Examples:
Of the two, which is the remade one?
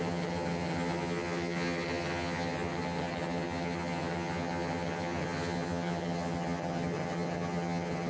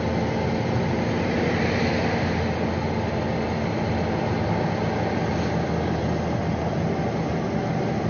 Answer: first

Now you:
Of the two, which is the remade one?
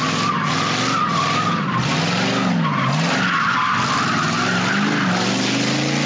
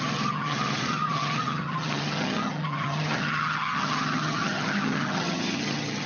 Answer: second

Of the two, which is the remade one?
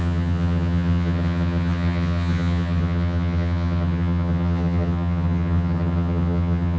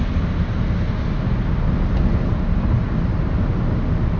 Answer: first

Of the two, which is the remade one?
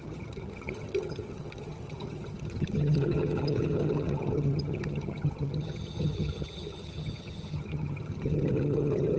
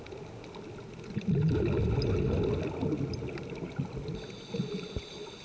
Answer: first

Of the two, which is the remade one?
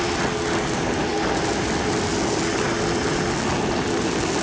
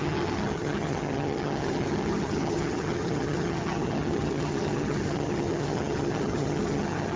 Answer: second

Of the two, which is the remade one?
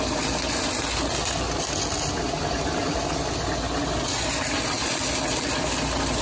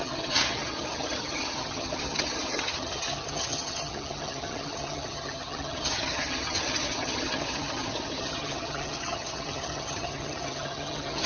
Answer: second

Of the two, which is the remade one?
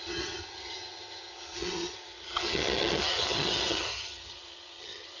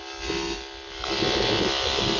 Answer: first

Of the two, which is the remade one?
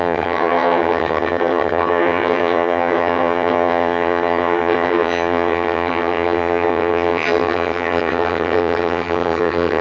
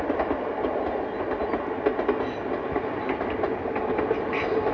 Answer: first